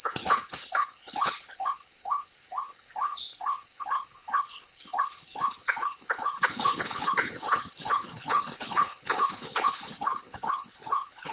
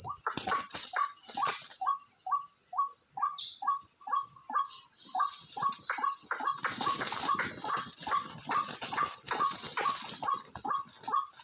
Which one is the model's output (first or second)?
first